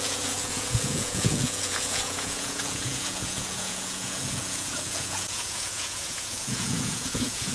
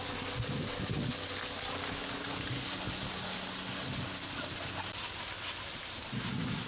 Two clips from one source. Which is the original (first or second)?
second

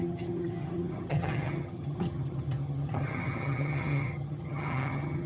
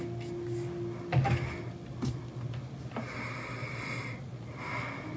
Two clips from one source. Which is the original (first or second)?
second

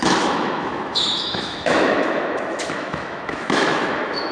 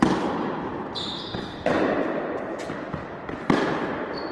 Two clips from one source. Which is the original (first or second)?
second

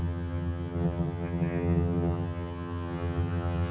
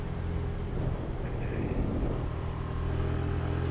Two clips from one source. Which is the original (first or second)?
second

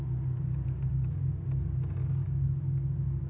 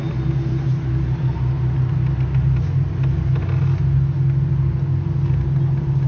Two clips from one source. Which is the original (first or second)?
second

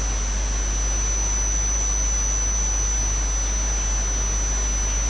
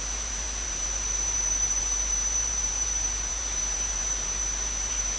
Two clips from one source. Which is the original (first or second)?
first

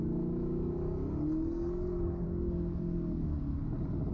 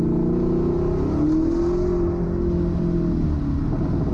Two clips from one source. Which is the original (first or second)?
second